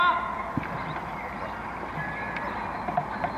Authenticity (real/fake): real